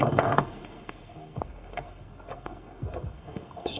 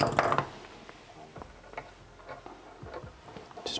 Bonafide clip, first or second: second